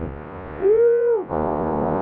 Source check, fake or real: fake